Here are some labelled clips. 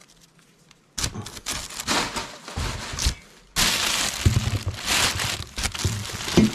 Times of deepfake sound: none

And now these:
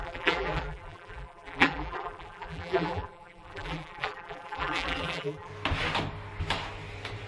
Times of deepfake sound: 0.0-5.5

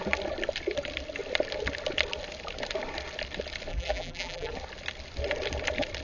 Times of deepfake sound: 3.7-4.5

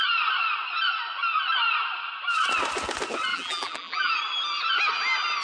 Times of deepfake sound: 3.3-4.1

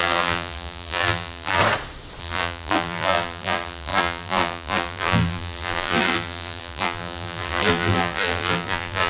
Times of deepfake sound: 0.0-1.6; 2.2-9.1

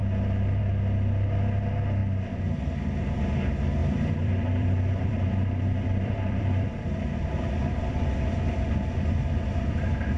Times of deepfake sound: 0.0-0.6; 3.8-7.2

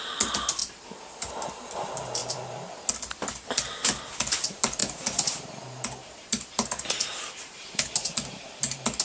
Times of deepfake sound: 0.6-1.3; 4.8-5.5; 6.0-8.5

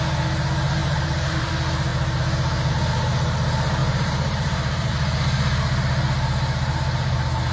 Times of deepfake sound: 0.8-1.5; 3.8-4.9